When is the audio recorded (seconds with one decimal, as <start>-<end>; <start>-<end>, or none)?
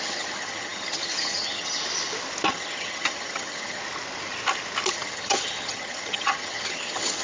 1.8-2.5; 3.8-4.9